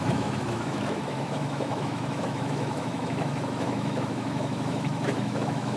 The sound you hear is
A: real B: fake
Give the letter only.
B